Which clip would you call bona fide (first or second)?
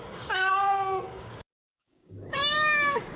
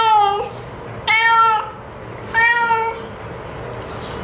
second